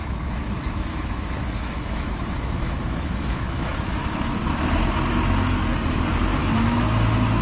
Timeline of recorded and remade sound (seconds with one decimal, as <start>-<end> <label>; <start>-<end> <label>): 0.0-4.4 remade; 4.4-6.4 recorded; 6.4-7.4 remade